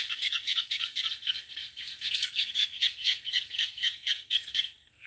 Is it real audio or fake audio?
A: fake